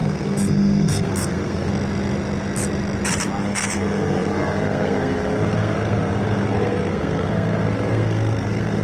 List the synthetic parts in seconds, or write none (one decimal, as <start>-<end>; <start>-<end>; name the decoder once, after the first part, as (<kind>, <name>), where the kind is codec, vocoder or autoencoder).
0.0-1.7 (codec, SNAC); 3.4-8.8